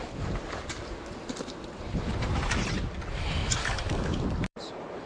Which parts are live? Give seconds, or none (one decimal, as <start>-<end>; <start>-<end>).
3.4-4.4